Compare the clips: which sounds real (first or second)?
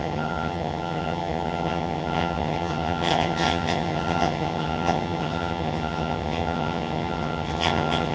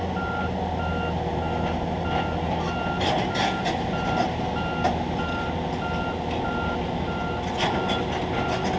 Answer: second